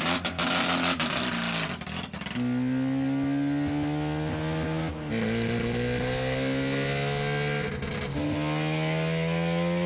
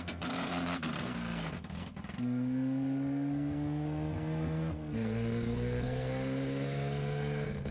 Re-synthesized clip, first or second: second